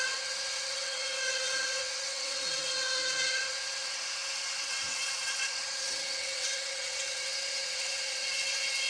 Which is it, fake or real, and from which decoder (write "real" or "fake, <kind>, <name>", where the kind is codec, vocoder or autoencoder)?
fake, vocoder, WaveNeXt